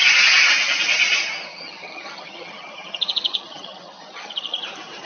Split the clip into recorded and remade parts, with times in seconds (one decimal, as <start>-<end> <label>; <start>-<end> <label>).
0.0-1.5 recorded; 1.5-4.6 remade; 4.6-5.1 recorded